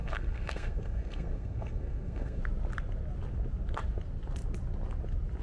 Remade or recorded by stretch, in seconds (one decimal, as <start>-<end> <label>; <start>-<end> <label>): 0.0-2.4 remade; 2.4-5.4 recorded